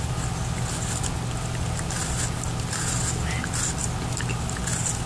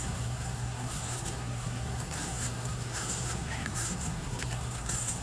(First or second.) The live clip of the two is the first